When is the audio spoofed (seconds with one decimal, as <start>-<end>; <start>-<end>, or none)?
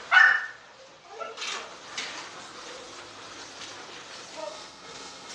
4.4-5.3